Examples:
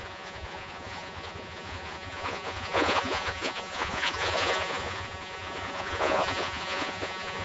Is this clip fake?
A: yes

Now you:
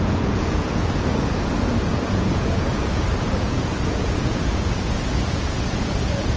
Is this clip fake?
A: yes